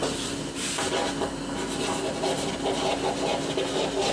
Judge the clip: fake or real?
real